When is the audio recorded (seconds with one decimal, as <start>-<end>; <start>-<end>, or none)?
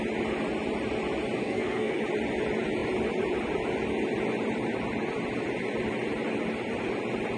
0.0-1.4; 2.0-7.4